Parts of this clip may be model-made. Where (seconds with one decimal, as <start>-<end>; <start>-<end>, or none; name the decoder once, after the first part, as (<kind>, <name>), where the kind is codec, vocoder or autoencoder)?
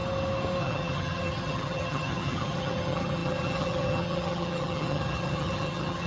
0.6-6.1 (vocoder, HiFi-GAN)